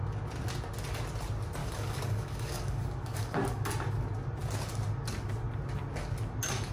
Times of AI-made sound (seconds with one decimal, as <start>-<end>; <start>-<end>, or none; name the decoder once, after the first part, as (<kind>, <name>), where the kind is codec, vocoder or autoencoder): 1.6-3.7 (codec, DAC)